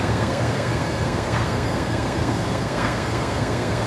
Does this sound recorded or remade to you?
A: remade